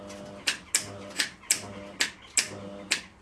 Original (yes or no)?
yes